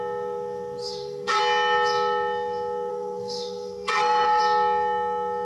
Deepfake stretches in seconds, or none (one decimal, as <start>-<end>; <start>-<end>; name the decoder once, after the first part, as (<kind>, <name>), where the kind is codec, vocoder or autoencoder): 0.8-1.4 (codec, SNAC); 2.9-4.4